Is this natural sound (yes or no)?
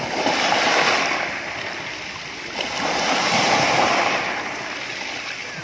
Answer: no